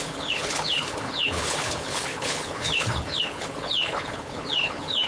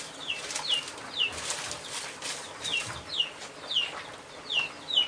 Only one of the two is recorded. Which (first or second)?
second